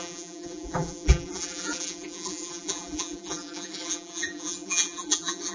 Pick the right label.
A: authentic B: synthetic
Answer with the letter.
B